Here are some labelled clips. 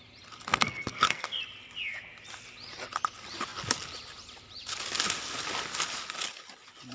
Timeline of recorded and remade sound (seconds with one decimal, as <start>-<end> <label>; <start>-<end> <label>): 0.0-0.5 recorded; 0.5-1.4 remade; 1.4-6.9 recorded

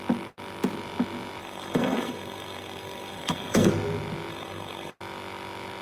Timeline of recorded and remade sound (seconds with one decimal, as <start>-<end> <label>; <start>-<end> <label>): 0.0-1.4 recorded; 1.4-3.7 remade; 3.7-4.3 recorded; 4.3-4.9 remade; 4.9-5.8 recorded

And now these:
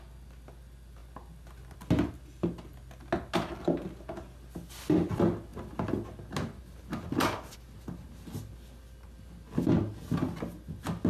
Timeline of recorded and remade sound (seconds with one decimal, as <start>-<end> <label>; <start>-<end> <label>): 0.0-11.1 recorded

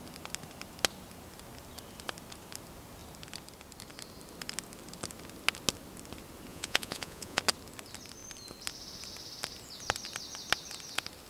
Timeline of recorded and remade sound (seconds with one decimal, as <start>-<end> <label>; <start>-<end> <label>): 0.0-6.5 recorded; 6.5-7.4 remade; 7.4-11.3 recorded